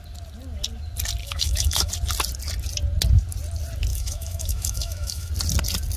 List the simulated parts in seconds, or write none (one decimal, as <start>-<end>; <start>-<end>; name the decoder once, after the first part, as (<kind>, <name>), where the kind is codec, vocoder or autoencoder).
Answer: 1.2-1.9 (autoencoder, DAC-VAE); 3.9-5.3